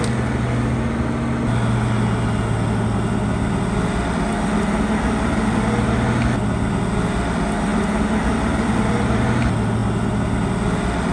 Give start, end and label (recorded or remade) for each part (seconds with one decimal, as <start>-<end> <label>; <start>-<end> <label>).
0.0-7.7 recorded; 7.7-9.2 remade; 9.2-9.8 recorded; 9.8-10.4 remade; 10.4-11.1 recorded